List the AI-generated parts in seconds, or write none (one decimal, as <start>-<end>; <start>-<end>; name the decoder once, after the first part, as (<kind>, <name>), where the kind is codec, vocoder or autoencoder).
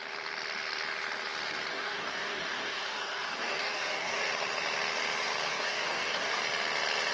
1.7-4.3 (codec, DAC); 5.5-6.4